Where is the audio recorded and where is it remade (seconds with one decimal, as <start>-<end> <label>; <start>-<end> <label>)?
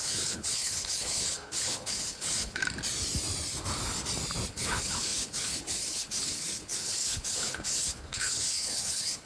0.0-2.6 remade; 2.6-4.5 recorded; 4.5-9.3 remade